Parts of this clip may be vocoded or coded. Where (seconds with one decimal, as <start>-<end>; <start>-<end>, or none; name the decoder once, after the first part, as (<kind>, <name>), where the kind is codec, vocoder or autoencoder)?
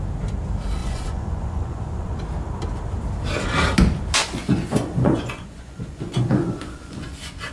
0.8-2.2 (vocoder, Vocos); 4.2-7.5